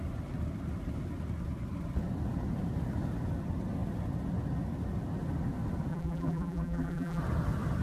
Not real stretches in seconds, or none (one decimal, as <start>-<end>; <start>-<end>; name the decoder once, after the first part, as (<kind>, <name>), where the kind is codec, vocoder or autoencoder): 5.9-7.2 (vocoder, BigVGAN v2)